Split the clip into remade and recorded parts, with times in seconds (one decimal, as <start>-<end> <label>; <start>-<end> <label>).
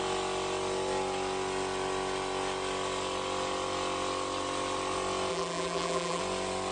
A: 0.0-5.3 recorded; 5.3-6.2 remade; 6.2-6.7 recorded